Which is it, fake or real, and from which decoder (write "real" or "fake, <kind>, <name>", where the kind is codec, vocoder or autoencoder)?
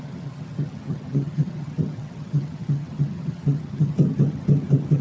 fake, vocoder, HiFi-GAN